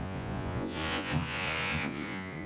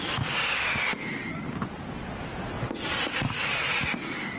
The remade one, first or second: first